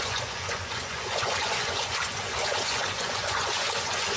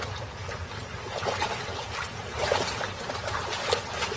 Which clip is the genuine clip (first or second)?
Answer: second